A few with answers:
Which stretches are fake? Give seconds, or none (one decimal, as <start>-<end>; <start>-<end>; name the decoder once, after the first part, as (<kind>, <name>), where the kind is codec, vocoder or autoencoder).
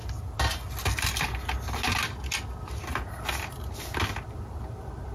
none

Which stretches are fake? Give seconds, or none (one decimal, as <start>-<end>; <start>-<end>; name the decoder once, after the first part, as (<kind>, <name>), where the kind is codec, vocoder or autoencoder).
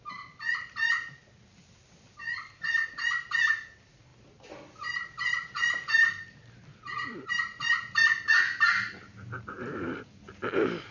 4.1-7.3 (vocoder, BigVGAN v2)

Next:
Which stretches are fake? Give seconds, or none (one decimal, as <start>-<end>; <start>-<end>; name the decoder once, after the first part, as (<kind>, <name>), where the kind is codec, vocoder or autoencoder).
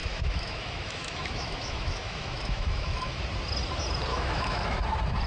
0.0-3.2 (autoencoder, DAC-VAE); 4.1-4.8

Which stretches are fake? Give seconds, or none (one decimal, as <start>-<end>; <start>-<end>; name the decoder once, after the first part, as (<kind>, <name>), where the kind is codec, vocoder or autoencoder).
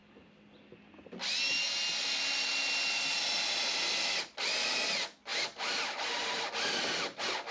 5.3-6.5 (vocoder, BigVGAN v2)